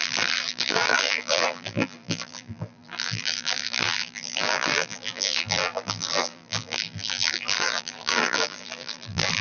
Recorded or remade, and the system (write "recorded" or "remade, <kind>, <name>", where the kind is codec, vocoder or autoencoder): remade, vocoder, BigVGAN v2